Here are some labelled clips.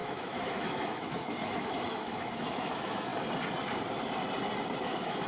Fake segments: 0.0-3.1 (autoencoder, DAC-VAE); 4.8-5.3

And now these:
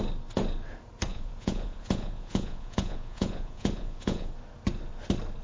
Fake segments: 1.1-4.3 (vocoder, Vocos)

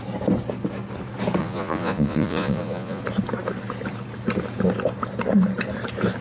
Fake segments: 1.4-3.0 (vocoder, Vocos)

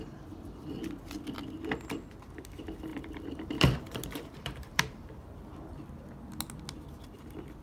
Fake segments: 2.9-5.4 (vocoder, BigVGAN v2)

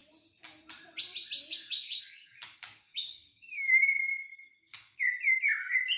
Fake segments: 1.4-5.0 (codec, DAC)